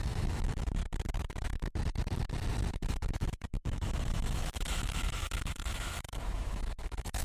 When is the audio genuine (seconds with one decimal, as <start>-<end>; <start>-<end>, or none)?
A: 0.8-2.7